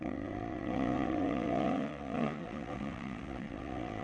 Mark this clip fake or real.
fake